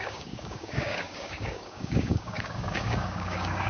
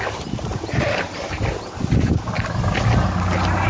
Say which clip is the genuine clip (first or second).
second